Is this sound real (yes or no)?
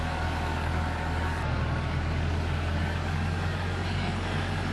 no